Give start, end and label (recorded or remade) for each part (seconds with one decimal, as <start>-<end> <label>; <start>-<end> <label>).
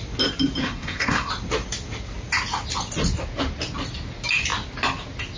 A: 0.0-0.6 recorded; 0.6-1.3 remade; 1.3-5.4 recorded